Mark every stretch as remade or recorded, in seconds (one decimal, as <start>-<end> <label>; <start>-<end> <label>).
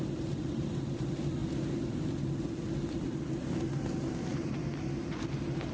0.0-5.7 recorded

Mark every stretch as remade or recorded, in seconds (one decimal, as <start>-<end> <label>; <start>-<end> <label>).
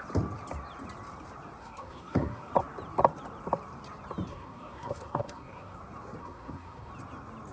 0.0-1.6 recorded; 1.6-2.5 remade; 2.5-4.3 recorded; 4.3-5.8 remade; 5.8-6.2 recorded; 6.2-6.9 remade; 6.9-7.5 recorded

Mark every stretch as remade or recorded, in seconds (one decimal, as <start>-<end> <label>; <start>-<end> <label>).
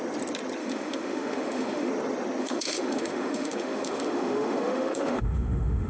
0.0-0.6 recorded; 0.6-1.9 remade; 1.9-2.4 recorded; 2.4-5.9 remade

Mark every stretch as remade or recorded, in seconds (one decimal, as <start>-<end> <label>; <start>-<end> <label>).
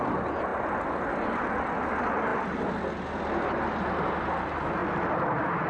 0.0-5.7 recorded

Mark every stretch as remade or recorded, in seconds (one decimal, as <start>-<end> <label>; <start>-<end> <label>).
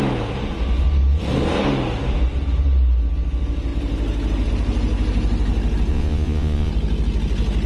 0.0-5.9 recorded; 5.9-6.7 remade; 6.7-7.7 recorded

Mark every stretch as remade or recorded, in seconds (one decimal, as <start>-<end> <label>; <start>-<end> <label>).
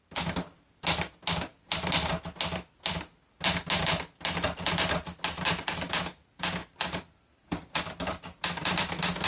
0.0-6.6 recorded; 6.6-7.8 remade; 7.8-9.3 recorded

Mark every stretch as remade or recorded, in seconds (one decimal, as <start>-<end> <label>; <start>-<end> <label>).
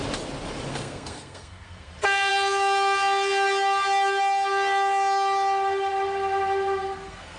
0.0-0.7 recorded; 0.7-1.9 remade; 1.9-6.9 recorded; 6.9-7.4 remade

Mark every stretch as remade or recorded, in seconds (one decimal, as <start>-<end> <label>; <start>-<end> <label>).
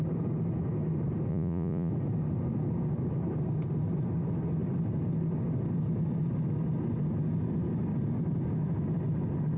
0.0-1.3 recorded; 1.3-1.9 remade; 1.9-9.6 recorded